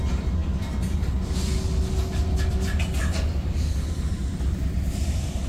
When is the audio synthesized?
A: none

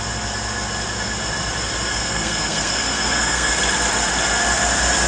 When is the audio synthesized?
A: 1.9-3.5 (codec, SNAC)

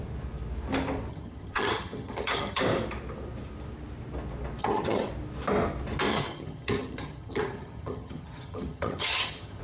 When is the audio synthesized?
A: 1.1-2.6 (vocoder, HiFi-GAN); 4.6-5.1; 6.1-9.6

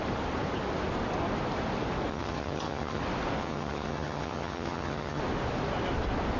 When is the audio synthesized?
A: 2.1-3.0 (vocoder, HiFi-GAN); 3.4-5.2

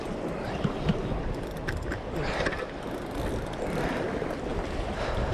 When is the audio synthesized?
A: none

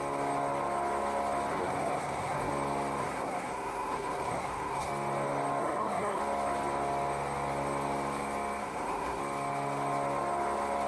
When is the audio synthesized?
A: 1.5-2.5 (codec, SNAC); 3.0-4.9; 5.6-6.2; 8.6-9.2

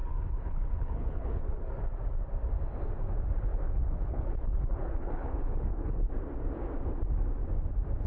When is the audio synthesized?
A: 0.0-1.7 (codec, HILCodec); 3.5-6.1

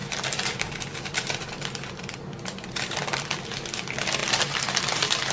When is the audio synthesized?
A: none